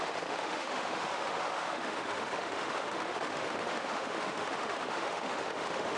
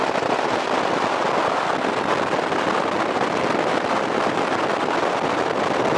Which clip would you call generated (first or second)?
first